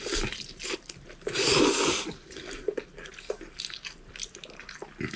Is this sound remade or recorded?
recorded